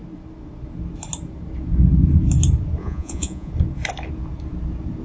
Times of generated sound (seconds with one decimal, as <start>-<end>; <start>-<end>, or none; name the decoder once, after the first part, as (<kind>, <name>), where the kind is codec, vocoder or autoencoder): 2.8-3.5 (vocoder, Vocos)